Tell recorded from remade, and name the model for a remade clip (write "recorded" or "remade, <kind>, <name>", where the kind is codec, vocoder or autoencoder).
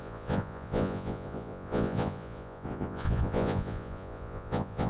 remade, vocoder, Vocos